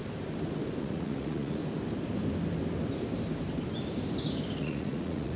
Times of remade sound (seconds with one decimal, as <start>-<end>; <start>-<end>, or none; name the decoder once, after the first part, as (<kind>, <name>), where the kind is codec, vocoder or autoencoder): 0.8-1.6 (vocoder, Vocos); 4.6-5.4